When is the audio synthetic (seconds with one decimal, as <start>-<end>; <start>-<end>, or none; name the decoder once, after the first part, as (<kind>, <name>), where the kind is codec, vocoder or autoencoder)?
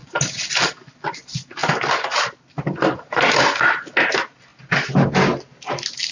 none